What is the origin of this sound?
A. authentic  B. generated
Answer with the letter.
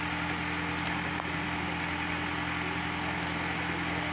A